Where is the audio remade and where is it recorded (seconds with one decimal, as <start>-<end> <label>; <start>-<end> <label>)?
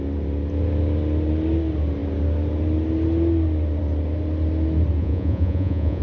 0.0-5.0 recorded; 5.0-6.0 remade